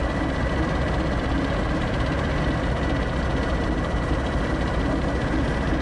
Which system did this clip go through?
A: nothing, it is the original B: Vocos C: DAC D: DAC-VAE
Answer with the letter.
A